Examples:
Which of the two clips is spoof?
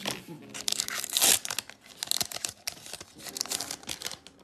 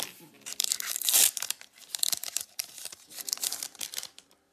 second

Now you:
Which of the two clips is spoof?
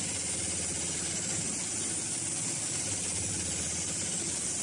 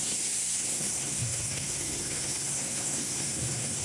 second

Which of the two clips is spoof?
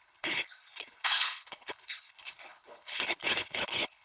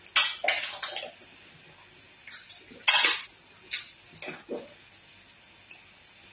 first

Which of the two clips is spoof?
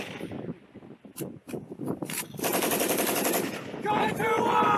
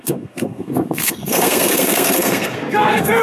second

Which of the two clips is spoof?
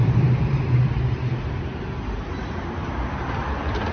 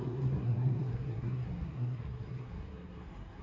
second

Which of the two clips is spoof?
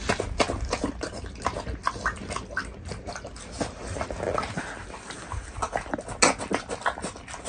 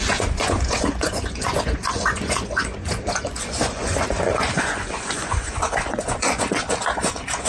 second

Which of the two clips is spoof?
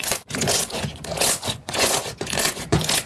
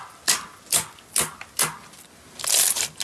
first